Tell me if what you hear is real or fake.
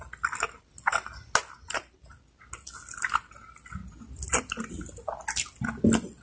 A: real